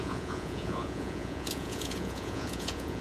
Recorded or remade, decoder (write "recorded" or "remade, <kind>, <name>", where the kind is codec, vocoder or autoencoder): remade, vocoder, Vocos